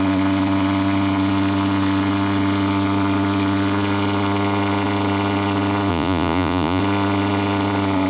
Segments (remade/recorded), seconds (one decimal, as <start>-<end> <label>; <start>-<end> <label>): 0.0-5.9 recorded; 5.9-6.8 remade; 6.8-8.1 recorded